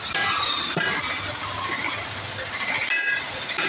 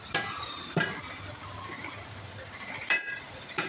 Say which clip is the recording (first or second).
first